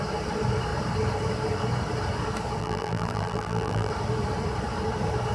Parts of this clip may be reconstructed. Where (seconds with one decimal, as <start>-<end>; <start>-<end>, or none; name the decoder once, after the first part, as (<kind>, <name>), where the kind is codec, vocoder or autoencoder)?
2.6-3.9 (vocoder, BigVGAN v2)